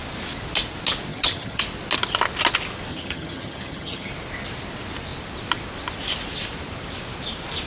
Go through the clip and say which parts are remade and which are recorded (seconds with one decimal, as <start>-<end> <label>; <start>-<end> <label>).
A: 0.0-1.1 recorded; 1.1-1.6 remade; 1.6-2.9 recorded; 2.9-4.1 remade; 4.1-7.7 recorded